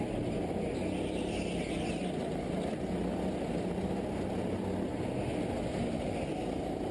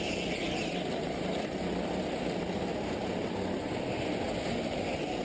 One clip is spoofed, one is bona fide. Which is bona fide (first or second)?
first